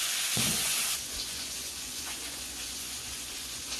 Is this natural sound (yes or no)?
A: no